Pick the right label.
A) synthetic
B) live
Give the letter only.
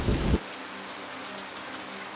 B